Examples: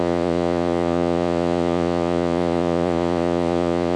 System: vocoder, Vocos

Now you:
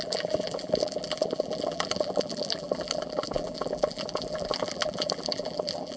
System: vocoder, BigVGAN v2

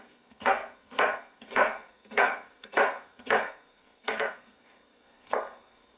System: codec, SNAC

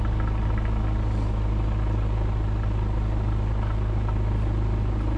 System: none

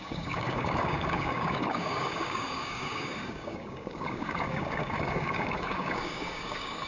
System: codec, DAC